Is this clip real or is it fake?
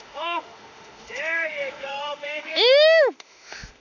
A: fake